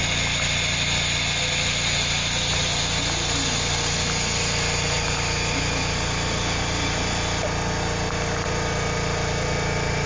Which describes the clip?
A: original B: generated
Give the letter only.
A